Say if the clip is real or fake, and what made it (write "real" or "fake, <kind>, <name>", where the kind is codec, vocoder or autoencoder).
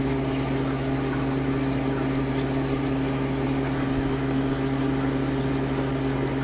real